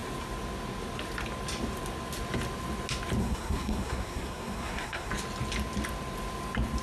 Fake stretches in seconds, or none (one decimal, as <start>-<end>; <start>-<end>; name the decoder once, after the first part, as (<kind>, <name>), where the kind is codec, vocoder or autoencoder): 3.2-5.1 (codec, SNAC)